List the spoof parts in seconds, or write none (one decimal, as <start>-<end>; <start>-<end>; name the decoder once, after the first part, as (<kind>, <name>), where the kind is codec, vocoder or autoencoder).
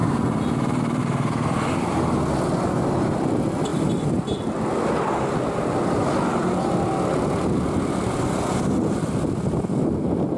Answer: none